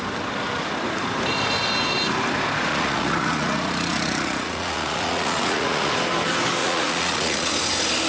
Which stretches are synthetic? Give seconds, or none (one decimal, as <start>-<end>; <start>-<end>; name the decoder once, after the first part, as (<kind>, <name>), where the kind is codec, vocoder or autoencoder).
2.7-5.9 (vocoder, Vocos); 6.6-7.5